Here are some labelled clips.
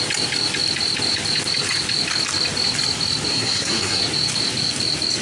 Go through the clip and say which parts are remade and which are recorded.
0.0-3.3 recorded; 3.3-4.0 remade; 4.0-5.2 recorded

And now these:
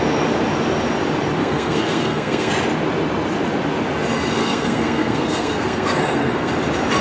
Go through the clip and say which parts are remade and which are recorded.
0.0-1.4 recorded; 1.4-2.5 remade; 2.5-4.4 recorded; 4.4-6.5 remade; 6.5-7.0 recorded

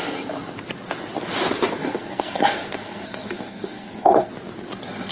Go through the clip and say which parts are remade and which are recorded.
0.0-1.8 recorded; 1.8-4.3 remade; 4.3-5.1 recorded